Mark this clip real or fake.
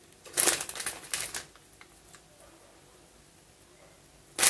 real